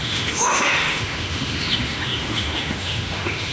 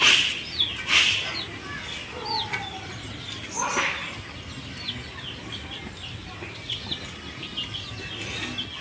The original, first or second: second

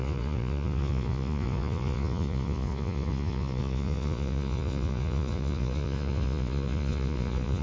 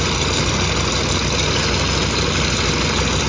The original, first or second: second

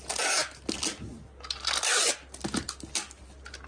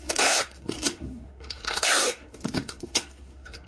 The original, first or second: first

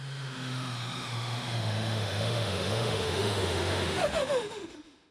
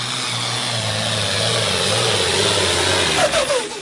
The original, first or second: second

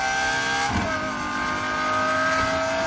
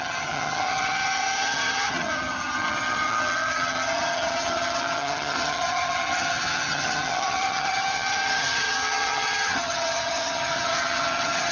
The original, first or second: first